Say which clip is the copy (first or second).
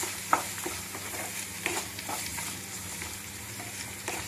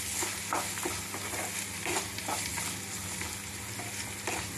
first